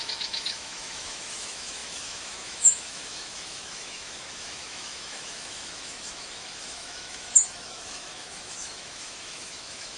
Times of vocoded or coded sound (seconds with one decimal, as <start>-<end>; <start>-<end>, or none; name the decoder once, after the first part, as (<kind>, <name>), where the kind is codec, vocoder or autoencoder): 0.0-10.0 (autoencoder, DAC-VAE)